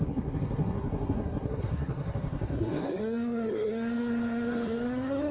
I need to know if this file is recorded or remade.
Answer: remade